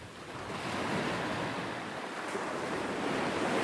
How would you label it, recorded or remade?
recorded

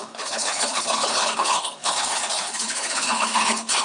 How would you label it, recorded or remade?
remade